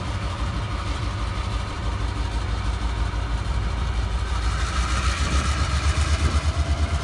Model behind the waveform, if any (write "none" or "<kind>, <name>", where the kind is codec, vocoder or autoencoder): vocoder, BigVGAN v2